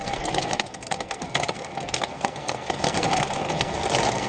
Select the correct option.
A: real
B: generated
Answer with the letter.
B